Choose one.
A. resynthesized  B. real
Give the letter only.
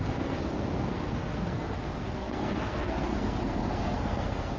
A